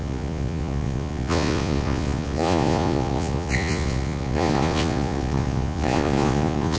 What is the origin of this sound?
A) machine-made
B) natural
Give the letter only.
A